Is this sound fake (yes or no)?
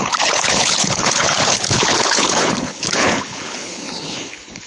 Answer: yes